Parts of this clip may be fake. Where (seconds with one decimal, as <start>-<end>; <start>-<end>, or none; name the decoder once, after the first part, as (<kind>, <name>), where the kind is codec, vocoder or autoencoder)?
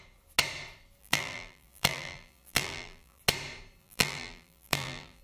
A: 1.0-3.2 (vocoder, BigVGAN v2); 3.8-5.2